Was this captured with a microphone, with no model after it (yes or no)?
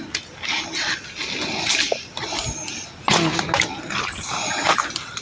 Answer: yes